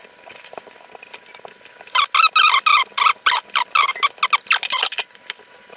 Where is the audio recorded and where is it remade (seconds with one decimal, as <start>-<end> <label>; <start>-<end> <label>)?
0.0-5.8 recorded